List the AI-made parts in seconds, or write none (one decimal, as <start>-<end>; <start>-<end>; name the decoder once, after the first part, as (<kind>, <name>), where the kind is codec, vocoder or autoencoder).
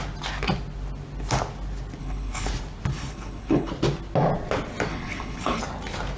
2.0-2.5 (codec, HILCodec); 2.9-3.7; 4.9-5.6